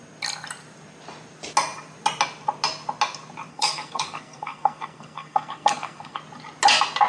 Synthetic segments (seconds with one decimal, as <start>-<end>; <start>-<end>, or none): 3.5-6.2